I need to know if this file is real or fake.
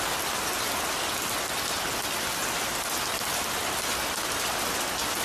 real